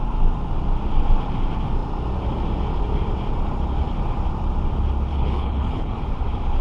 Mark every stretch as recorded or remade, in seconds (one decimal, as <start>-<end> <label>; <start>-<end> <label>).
0.0-5.1 recorded; 5.1-6.0 remade; 6.0-6.6 recorded